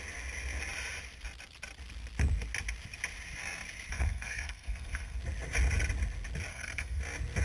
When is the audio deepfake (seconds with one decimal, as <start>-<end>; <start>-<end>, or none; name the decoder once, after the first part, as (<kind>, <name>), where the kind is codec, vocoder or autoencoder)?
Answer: 3.9-5.2 (codec, SNAC); 6.5-7.0